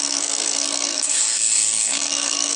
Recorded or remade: remade